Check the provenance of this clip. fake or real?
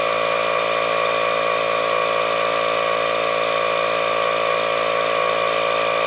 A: real